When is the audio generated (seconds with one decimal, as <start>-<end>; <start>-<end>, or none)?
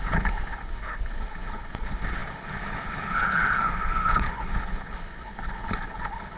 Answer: 0.0-6.4